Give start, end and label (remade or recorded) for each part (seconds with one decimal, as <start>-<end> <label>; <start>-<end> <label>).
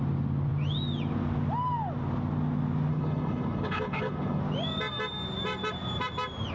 0.0-2.9 recorded; 2.9-4.4 remade; 4.4-6.5 recorded